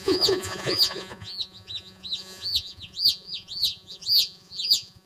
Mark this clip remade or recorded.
remade